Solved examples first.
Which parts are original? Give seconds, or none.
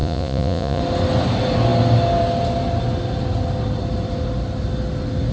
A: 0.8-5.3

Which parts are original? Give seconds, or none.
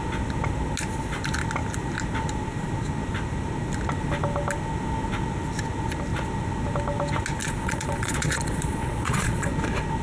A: 0.0-7.4; 9.5-10.0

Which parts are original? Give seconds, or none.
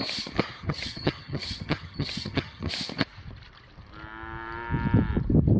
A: 0.0-0.6; 2.7-5.6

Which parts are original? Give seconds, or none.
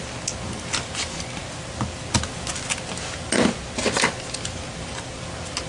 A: 0.0-5.7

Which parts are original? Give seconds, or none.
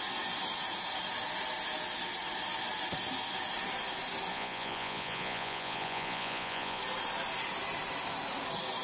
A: 0.0-4.3; 6.8-8.8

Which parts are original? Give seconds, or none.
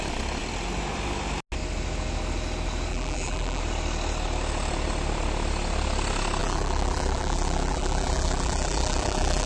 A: 0.0-2.9; 3.6-6.4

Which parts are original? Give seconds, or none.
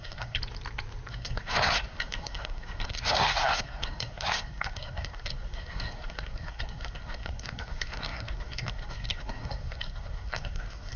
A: 0.4-1.1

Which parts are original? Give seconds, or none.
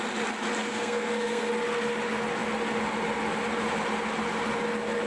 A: 0.0-0.6; 1.5-5.1